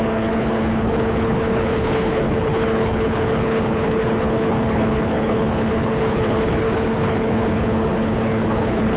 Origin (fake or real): fake